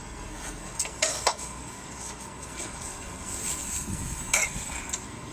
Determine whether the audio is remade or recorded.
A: remade